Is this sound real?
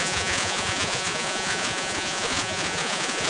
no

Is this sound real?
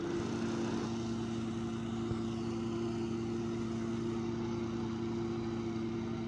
yes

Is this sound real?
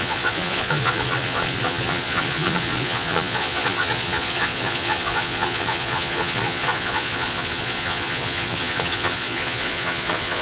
no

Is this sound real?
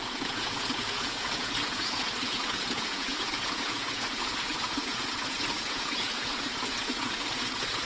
no